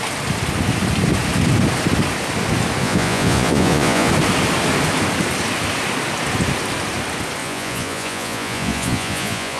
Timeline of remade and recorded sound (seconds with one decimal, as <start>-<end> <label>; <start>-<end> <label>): 0.0-2.8 recorded; 2.8-4.1 remade; 4.1-7.4 recorded; 7.4-9.6 remade